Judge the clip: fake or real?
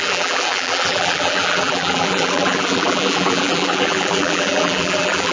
fake